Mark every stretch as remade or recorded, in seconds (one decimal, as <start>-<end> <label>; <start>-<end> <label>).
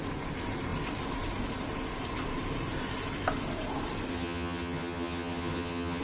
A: 0.0-4.1 recorded; 4.1-6.0 remade